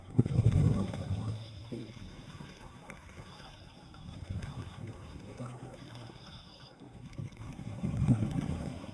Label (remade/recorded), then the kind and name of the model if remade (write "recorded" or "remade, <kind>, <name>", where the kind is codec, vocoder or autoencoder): remade, codec, SNAC